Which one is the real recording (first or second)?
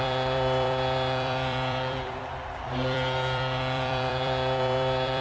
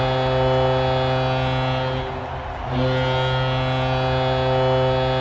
second